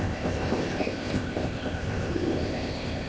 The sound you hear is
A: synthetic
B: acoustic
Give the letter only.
A